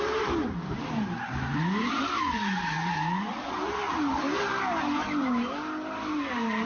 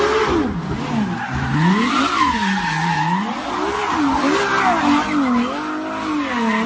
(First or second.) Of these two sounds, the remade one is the first